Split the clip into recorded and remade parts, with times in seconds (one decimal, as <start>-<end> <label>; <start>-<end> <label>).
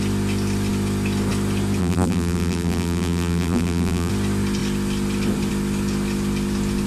0.0-1.8 recorded; 1.8-4.1 remade; 4.1-6.9 recorded